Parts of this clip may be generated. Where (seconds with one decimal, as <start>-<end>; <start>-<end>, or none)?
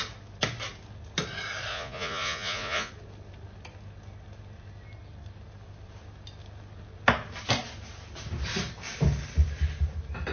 1.7-2.9